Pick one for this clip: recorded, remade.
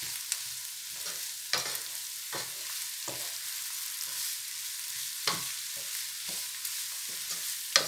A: recorded